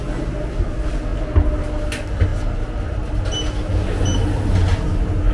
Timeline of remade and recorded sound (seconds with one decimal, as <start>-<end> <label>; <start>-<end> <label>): 0.0-5.3 recorded